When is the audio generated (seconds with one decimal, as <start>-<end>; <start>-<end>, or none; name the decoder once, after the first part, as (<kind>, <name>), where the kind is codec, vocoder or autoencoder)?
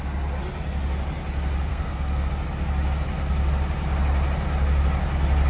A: 1.7-2.3 (codec, SNAC)